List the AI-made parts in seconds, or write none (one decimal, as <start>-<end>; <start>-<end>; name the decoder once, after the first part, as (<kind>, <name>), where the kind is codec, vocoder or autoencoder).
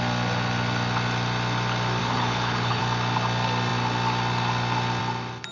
2.0-2.8 (codec, HILCodec)